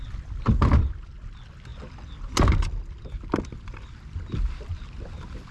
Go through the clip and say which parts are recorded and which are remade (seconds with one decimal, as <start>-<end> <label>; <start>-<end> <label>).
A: 0.0-5.5 recorded